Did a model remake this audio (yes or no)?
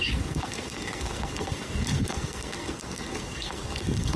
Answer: yes